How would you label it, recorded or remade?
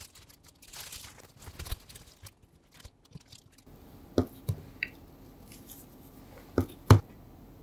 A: recorded